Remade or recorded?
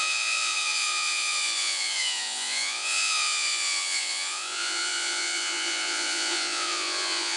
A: remade